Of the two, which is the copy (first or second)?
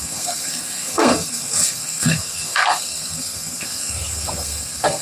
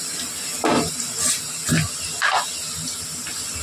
first